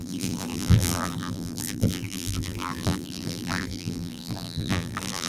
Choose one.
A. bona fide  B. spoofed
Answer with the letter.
B